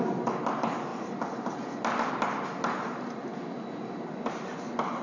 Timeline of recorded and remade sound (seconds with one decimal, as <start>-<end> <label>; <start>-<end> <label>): 0.0-5.0 recorded